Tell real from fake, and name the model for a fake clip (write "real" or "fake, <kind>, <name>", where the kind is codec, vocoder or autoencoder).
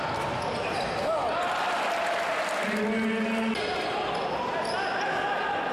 real